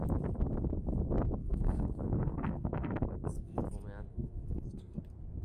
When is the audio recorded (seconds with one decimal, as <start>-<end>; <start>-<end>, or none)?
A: 0.0-1.4; 3.6-4.1; 5.0-5.4